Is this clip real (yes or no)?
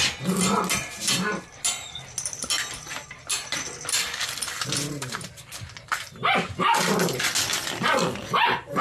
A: yes